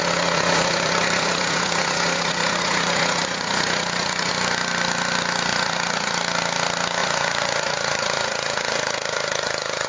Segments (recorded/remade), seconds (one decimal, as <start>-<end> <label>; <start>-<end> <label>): 0.0-4.3 remade; 4.3-5.5 recorded; 5.5-6.1 remade; 6.1-7.0 recorded; 7.0-9.9 remade